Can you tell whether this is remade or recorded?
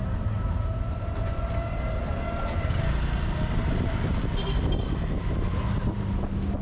recorded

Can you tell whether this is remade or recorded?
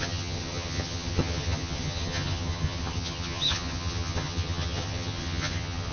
remade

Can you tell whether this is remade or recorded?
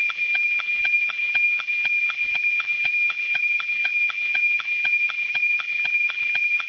remade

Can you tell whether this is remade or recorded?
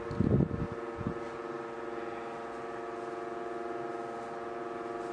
recorded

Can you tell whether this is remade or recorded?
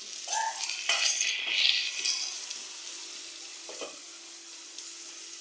recorded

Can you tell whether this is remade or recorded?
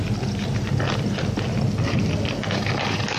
recorded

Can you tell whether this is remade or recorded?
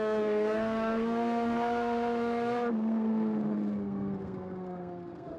remade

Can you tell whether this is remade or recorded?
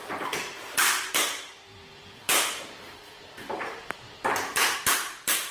remade